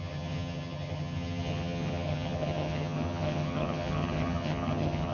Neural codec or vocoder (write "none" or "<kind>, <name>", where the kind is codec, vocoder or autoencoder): vocoder, HiFi-GAN